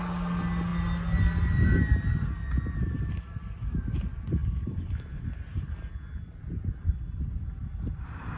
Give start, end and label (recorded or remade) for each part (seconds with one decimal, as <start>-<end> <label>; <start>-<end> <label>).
0.0-4.4 recorded; 4.4-5.7 remade; 5.7-8.4 recorded